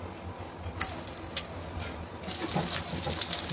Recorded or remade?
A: recorded